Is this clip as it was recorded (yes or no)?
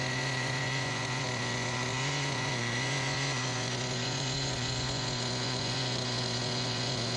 no